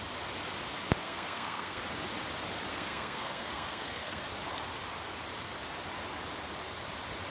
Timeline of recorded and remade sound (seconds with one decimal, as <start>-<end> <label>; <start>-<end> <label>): 0.0-1.0 recorded; 1.0-1.8 remade; 1.8-2.7 recorded; 2.7-4.2 remade; 4.2-7.3 recorded